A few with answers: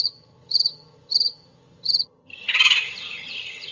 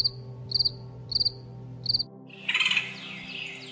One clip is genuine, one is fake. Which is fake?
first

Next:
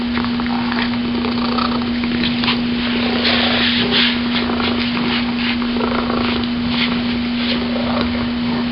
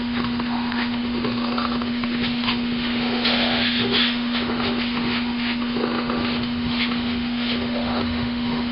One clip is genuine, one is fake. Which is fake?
second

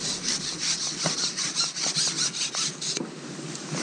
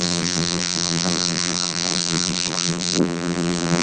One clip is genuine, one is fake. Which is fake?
second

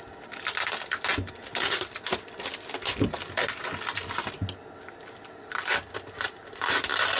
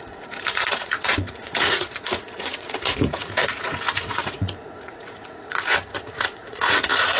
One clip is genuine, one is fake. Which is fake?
second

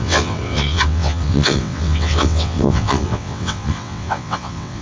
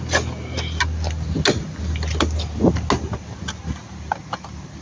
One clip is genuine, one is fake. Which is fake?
first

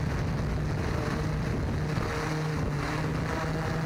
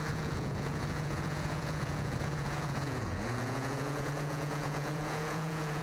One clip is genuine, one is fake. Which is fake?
second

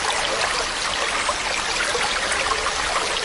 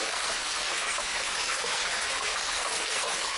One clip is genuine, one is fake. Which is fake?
second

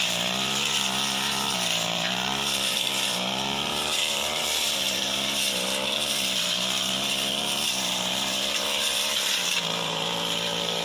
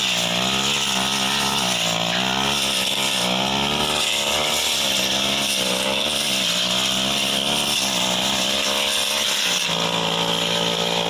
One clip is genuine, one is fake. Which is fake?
first